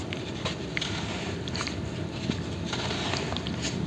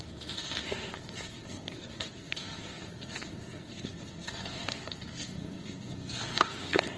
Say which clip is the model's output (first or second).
second